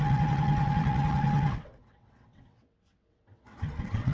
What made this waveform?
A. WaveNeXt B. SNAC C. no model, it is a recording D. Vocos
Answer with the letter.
A